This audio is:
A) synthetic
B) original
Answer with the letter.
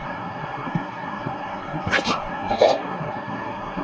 A